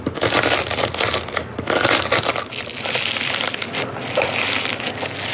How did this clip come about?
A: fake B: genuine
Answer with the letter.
B